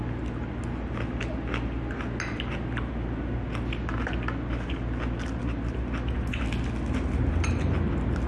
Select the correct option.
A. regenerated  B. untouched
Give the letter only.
B